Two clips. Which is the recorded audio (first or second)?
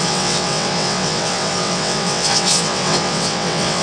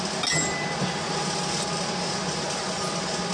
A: second